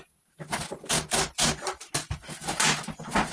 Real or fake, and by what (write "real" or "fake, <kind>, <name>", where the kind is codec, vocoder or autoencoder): real